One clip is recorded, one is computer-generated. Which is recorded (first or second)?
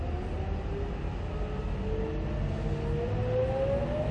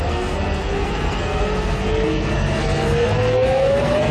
first